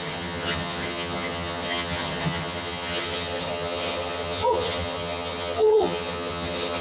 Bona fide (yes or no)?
no